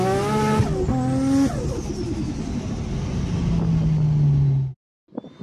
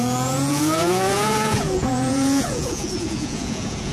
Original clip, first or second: first